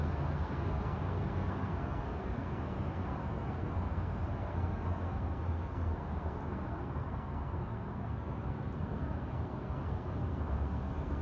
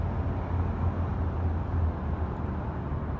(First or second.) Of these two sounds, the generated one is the first